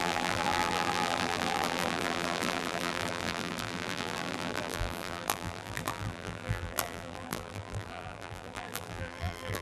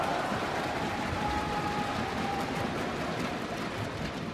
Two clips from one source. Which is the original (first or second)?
second